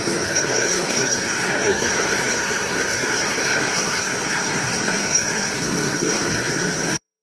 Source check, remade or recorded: remade